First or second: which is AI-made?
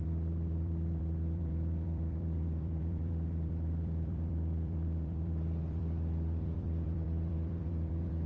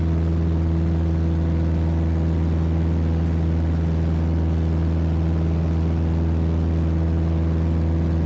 first